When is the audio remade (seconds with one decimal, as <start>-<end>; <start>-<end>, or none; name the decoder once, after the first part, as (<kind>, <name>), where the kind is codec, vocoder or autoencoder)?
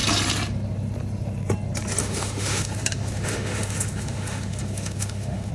2.0-5.5 (autoencoder, DAC-VAE)